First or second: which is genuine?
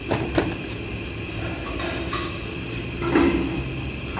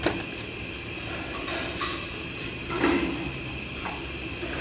first